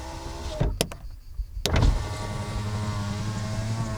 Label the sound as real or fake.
real